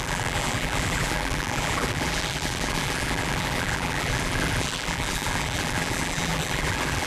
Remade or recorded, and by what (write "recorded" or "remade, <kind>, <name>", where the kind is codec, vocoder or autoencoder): remade, vocoder, BigVGAN v2